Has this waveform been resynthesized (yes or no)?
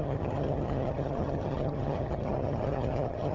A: yes